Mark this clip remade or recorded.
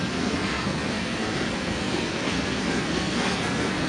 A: remade